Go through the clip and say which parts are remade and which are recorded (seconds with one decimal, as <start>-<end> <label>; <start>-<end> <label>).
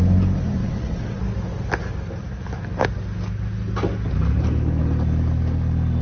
0.0-0.6 recorded; 0.6-1.2 remade; 1.2-6.0 recorded